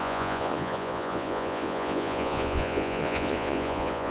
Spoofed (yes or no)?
yes